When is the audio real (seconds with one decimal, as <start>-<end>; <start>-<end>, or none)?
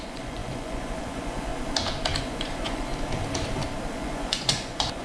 1.5-2.2; 2.9-3.9